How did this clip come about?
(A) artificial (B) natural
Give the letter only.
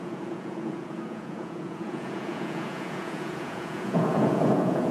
A